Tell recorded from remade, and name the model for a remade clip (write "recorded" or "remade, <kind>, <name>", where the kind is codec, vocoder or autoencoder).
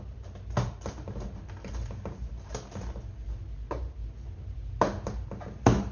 recorded